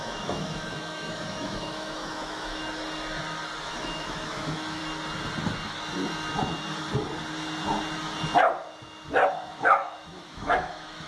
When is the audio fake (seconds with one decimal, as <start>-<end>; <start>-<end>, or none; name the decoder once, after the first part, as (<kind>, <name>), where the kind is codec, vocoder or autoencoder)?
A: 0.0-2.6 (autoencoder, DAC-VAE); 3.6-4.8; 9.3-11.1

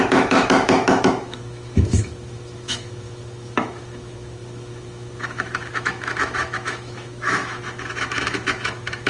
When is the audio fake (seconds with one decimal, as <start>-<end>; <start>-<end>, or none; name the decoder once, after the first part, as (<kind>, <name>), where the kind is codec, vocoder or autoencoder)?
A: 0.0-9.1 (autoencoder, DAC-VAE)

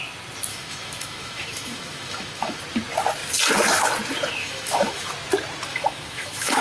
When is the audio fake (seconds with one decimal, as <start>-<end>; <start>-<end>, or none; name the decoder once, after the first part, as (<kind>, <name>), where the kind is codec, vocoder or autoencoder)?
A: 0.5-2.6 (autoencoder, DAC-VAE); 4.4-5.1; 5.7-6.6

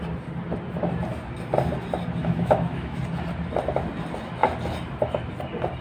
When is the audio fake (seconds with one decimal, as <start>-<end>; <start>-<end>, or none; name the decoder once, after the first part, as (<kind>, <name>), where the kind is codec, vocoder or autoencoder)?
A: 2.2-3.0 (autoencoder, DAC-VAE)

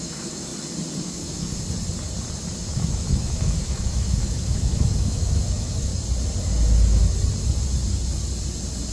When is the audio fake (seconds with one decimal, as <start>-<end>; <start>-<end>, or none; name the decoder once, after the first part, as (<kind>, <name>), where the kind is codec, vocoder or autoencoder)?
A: 0.0-0.5 (autoencoder, DAC-VAE); 1.0-1.5; 2.7-5.9

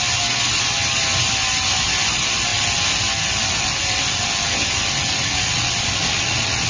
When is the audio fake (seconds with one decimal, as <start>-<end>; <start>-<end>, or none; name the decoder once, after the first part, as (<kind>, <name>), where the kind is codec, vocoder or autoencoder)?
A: none

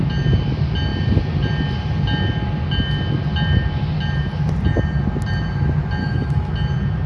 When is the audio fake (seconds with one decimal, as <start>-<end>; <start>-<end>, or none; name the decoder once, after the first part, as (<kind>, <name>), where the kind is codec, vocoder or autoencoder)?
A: 6.0-6.5 (autoencoder, DAC-VAE)

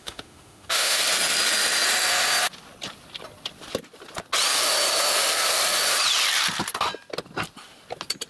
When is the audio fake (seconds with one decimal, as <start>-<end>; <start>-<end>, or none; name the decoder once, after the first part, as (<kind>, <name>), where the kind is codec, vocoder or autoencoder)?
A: 0.0-1.0 (autoencoder, DAC-VAE)